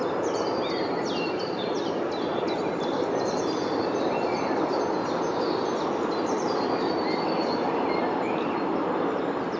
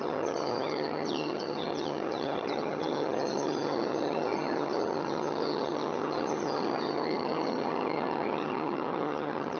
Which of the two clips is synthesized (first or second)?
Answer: second